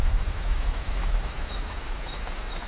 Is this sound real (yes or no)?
no